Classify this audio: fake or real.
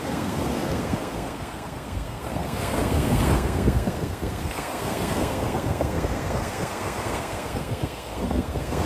fake